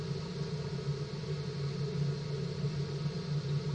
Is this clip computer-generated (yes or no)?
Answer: no